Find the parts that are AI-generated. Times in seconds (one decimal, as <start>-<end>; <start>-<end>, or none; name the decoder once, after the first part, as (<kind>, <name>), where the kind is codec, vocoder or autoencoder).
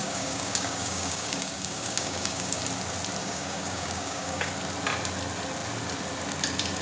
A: 0.0-2.6 (codec, DAC); 3.2-4.5